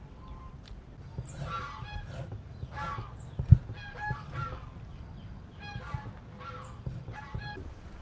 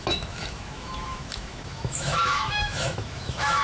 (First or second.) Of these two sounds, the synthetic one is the second